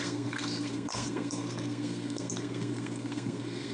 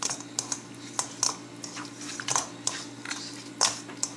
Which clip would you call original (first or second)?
second